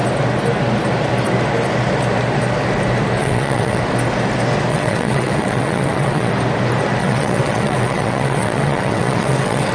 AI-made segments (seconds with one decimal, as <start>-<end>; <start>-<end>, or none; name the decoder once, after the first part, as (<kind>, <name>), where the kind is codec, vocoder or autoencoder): 3.2-3.8 (vocoder, WaveNeXt); 4.7-6.3; 7.0-9.7